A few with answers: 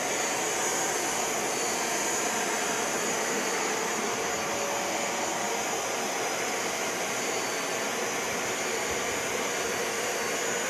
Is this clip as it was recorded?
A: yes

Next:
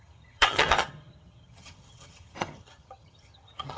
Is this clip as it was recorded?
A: no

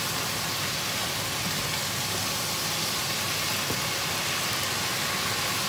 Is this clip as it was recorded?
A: yes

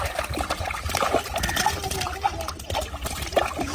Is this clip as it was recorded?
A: no